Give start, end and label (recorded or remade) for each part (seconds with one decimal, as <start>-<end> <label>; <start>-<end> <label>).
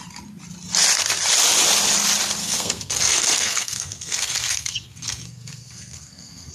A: 0.0-2.4 recorded; 2.4-6.5 remade